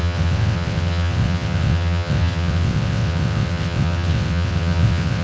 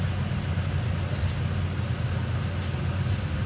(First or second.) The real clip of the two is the second